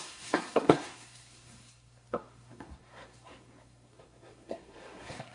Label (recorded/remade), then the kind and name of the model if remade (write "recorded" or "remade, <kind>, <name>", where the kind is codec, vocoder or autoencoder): remade, codec, SNAC